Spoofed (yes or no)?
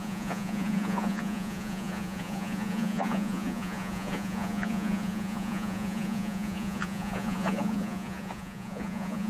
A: yes